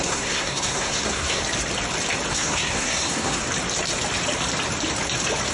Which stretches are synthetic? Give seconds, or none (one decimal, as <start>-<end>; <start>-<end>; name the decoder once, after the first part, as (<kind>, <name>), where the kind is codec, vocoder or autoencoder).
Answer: 0.0-1.4 (codec, SNAC); 2.3-3.4